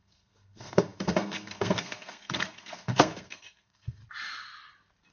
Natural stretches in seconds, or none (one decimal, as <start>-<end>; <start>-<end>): 4.0-5.1